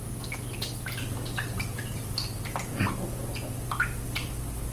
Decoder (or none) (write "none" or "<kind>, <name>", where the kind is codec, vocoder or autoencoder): none